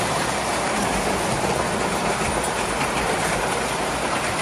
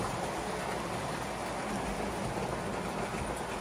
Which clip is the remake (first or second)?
first